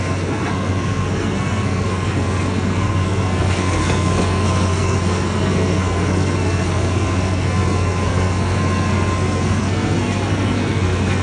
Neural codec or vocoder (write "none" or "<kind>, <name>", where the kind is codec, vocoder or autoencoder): codec, SNAC